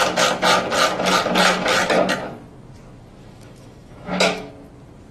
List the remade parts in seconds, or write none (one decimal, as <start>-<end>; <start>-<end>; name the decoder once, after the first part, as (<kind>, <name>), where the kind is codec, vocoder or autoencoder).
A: 3.2-4.5 (autoencoder, DAC-VAE)